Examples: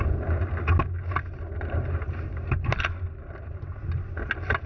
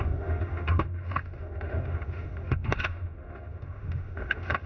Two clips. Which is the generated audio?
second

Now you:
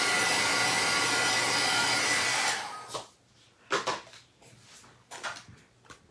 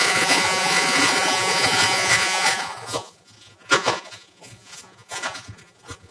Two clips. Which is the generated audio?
second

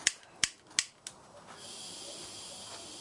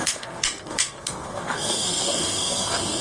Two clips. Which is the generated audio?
second